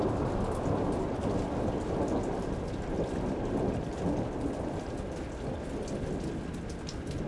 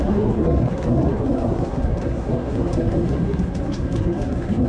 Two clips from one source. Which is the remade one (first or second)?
second